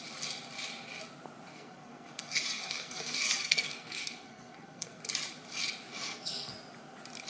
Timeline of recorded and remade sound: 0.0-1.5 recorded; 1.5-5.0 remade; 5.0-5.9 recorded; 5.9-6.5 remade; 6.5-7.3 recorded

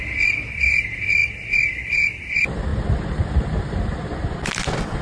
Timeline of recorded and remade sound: 0.0-5.0 recorded

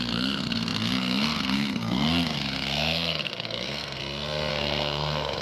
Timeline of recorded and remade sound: 0.0-4.0 remade; 4.0-4.5 recorded; 4.5-5.4 remade